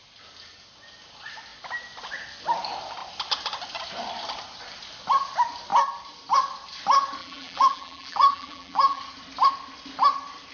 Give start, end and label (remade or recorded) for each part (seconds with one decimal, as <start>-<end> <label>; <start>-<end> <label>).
0.0-7.2 recorded; 7.2-9.0 remade; 9.0-10.5 recorded